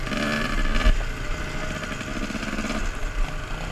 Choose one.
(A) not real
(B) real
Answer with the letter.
B